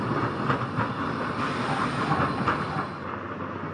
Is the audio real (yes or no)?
yes